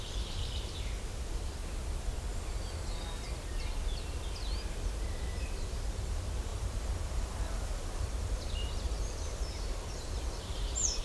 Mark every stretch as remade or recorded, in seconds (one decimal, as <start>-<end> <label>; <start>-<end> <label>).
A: 0.0-1.6 remade; 1.6-5.4 recorded; 5.4-11.0 remade